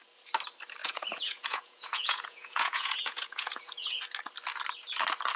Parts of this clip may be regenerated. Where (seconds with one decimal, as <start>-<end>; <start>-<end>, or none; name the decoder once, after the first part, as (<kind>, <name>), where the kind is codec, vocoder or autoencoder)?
0.8-4.0 (vocoder, Vocos)